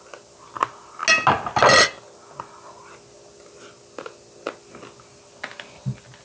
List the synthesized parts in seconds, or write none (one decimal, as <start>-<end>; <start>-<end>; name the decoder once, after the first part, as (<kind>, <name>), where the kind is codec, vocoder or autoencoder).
none